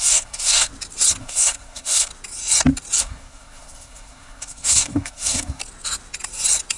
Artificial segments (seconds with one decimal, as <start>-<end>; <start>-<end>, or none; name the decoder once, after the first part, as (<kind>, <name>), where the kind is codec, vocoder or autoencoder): 0.0-0.7 (codec, SNAC); 1.2-2.1; 3.0-5.6